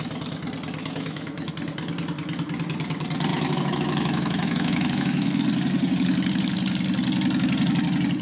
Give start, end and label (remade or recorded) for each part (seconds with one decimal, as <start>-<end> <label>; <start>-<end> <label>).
0.0-0.8 recorded; 0.8-1.5 remade; 1.5-3.3 recorded; 3.3-5.4 remade; 5.4-8.2 recorded